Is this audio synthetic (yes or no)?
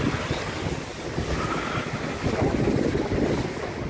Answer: no